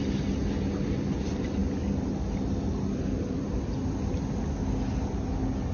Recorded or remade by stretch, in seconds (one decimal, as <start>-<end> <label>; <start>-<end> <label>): 0.0-5.7 recorded